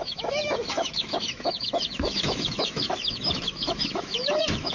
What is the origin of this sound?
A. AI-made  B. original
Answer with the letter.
A